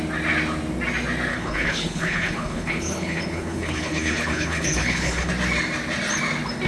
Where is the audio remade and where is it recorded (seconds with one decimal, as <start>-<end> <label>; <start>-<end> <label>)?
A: 0.0-1.3 recorded; 1.3-5.3 remade; 5.3-6.7 recorded